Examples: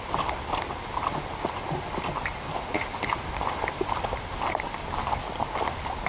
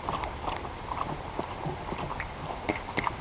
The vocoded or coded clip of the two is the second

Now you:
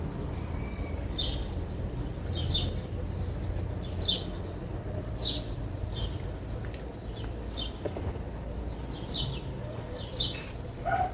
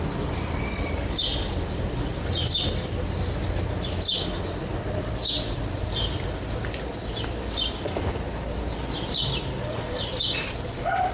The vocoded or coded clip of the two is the second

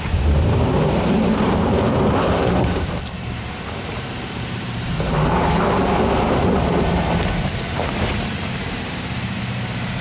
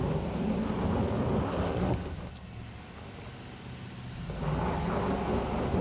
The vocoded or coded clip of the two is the first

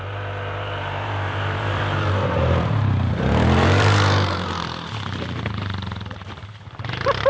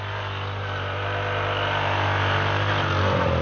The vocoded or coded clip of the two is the first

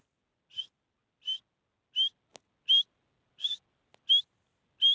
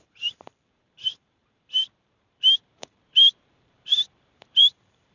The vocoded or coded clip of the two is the second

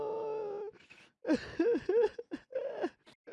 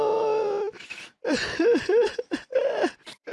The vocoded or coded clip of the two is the second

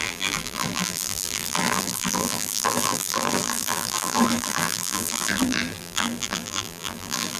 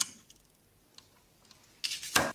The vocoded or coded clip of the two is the first